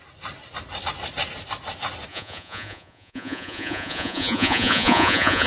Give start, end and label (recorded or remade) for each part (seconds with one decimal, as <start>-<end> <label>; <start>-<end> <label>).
0.0-2.1 recorded; 2.1-5.5 remade